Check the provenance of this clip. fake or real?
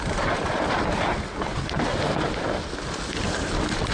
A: real